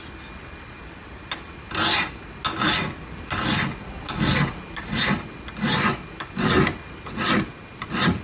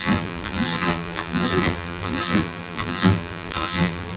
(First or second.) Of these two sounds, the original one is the first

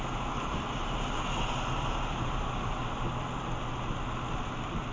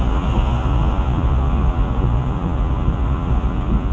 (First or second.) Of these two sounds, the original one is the first